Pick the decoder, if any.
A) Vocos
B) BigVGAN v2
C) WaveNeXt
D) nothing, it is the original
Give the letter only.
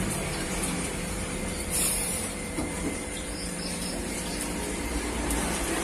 B